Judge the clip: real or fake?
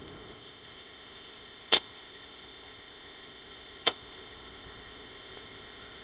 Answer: fake